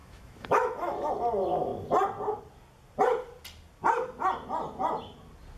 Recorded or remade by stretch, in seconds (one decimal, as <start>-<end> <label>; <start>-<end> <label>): 0.0-1.1 remade; 1.1-5.6 recorded